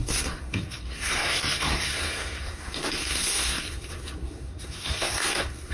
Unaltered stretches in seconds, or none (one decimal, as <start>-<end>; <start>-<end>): none